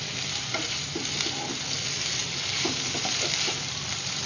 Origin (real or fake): real